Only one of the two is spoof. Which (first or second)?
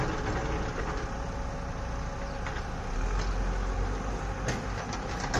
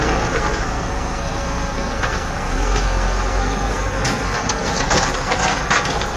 second